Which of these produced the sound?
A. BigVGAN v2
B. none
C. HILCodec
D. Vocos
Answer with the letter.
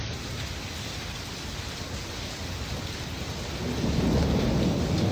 B